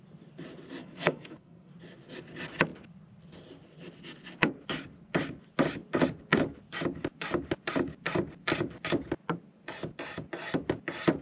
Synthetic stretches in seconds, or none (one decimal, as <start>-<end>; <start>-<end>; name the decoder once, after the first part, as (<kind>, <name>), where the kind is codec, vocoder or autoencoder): 0.8-1.7 (codec, SNAC)